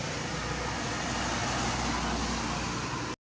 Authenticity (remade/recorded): recorded